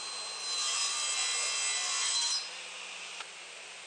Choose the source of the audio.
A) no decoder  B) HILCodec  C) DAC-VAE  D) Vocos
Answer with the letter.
A